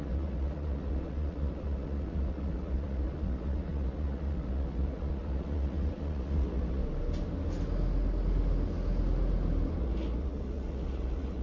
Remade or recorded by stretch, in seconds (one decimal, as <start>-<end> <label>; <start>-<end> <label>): 0.0-6.8 remade; 6.8-9.8 recorded; 9.8-11.4 remade